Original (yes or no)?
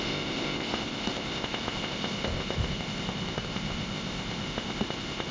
no